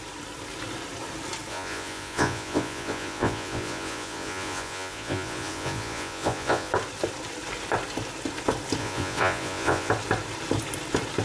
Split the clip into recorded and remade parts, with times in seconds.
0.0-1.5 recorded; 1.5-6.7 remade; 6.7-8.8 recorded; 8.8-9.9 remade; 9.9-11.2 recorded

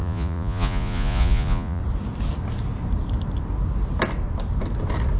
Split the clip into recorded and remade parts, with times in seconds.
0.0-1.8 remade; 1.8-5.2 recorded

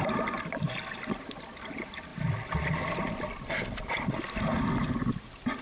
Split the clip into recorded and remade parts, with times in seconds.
0.0-5.6 recorded

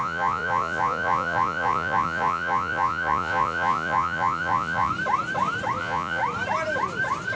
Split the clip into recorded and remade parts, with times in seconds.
0.0-4.9 remade; 4.9-5.8 recorded; 5.8-6.2 remade; 6.2-7.4 recorded

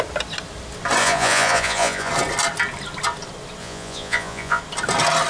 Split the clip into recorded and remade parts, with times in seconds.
0.0-1.0 recorded; 1.0-2.1 remade; 2.1-3.6 recorded; 3.6-4.6 remade; 4.6-5.3 recorded